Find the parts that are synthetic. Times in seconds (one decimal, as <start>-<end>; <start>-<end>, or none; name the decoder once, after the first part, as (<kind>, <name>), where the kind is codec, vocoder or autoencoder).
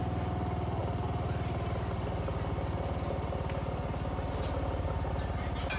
none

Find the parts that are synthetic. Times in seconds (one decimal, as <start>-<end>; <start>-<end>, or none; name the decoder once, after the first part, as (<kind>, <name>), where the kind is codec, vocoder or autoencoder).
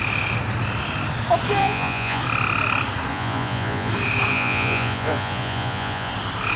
1.6-2.2 (vocoder, Vocos); 3.1-3.9; 4.3-6.1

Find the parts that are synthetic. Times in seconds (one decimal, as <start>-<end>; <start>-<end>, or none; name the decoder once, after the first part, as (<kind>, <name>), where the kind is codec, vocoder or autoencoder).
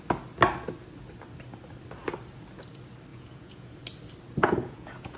3.1-3.7 (vocoder, Vocos); 4.4-5.2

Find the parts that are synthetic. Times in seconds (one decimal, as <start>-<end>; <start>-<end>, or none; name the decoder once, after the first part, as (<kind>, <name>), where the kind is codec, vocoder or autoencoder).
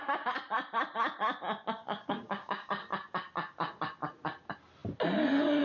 1.8-2.7 (codec, DAC)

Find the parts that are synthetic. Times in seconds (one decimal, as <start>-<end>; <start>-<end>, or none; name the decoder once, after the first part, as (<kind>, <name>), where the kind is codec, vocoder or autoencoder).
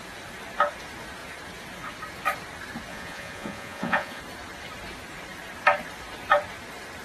2.9-4.2 (vocoder, Vocos)